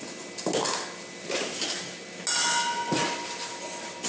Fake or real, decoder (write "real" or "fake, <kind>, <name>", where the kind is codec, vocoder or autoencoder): real